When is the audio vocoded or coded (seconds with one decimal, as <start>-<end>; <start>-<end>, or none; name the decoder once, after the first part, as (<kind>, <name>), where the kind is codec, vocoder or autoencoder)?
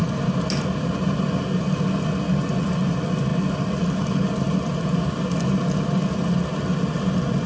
none